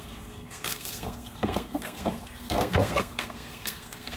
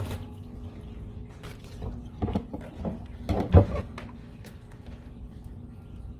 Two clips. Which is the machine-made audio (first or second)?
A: first